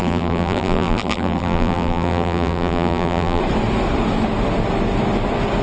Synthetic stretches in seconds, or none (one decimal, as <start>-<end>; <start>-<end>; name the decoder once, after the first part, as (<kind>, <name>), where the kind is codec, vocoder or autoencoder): 0.0-3.4 (vocoder, BigVGAN v2)